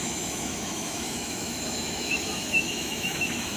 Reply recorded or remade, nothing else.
remade